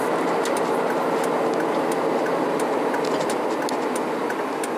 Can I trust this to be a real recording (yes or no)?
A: yes